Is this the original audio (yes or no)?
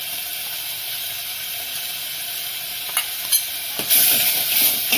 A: yes